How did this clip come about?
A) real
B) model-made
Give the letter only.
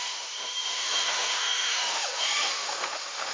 B